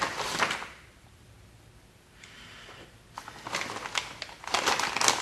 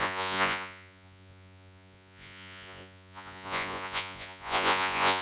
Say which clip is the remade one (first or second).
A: second